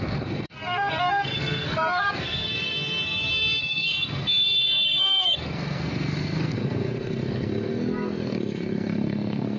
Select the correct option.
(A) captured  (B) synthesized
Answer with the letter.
B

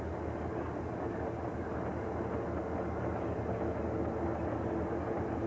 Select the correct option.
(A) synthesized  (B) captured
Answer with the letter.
B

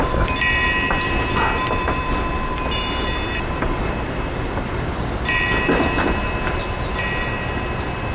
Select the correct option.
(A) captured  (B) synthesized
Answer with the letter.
B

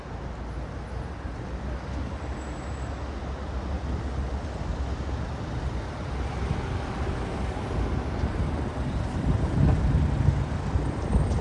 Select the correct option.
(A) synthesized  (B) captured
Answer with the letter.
B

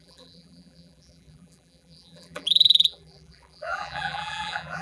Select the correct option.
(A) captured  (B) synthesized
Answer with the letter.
B